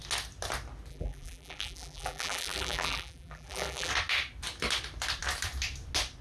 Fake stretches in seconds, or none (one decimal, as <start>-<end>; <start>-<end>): 0.9-3.9